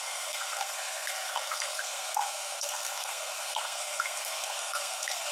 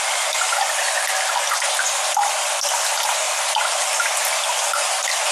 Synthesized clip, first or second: first